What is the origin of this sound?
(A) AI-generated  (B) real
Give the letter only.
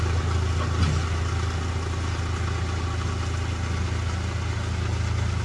B